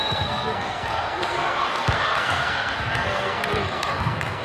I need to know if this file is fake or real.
fake